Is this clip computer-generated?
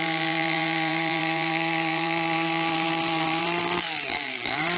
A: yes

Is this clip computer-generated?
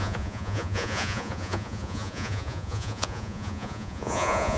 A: yes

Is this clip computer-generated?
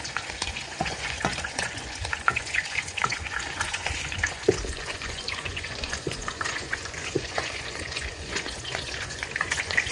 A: yes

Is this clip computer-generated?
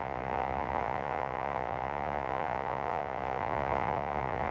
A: yes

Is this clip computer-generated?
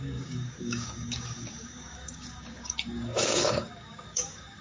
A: yes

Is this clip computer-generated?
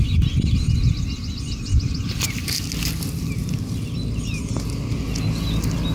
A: no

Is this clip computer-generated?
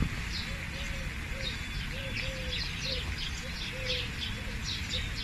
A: no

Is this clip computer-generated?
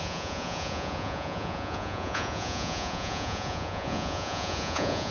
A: yes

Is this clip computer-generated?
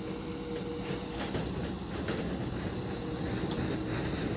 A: no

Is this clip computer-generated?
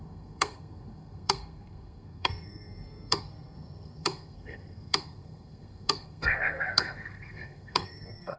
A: yes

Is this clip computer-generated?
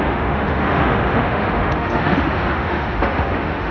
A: yes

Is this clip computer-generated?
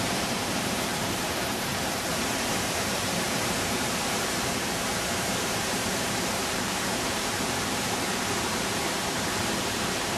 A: yes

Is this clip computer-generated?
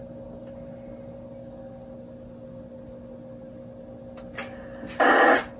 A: no